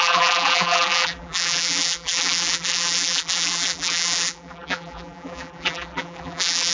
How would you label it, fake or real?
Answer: fake